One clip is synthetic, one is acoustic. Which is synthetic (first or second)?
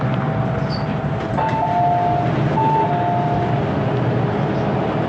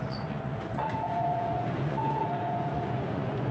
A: second